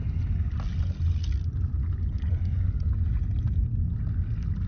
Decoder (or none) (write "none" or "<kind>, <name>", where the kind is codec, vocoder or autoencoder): none